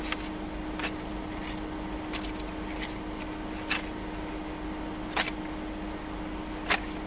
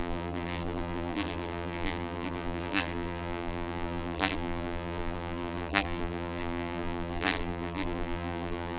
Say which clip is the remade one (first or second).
second